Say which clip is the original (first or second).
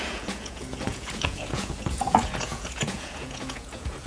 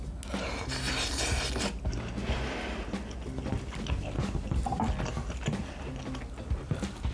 second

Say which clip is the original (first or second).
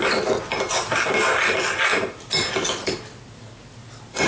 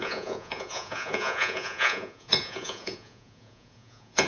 first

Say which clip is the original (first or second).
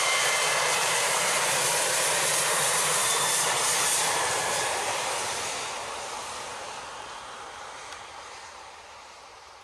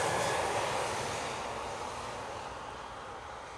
second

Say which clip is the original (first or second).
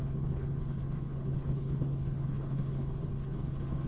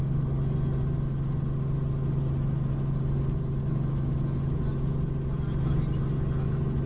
second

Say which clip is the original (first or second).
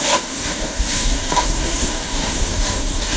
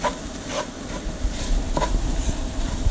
second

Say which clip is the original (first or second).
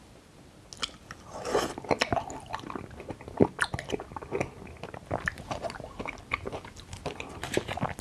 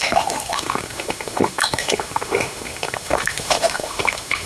first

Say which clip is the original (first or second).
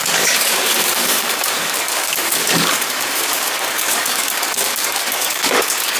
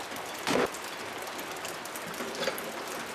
second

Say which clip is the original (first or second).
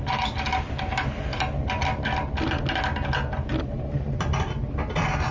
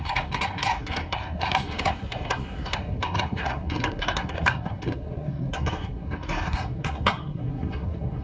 first